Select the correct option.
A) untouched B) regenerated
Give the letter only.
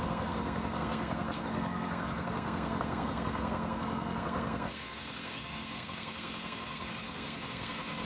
B